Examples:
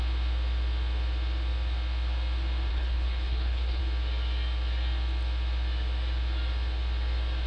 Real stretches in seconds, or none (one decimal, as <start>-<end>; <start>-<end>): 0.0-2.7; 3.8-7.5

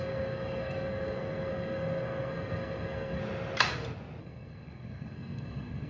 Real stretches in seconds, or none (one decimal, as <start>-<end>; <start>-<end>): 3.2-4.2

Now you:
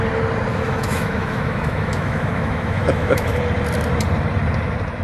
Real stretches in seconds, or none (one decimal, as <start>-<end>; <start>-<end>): 0.0-0.5; 3.4-5.0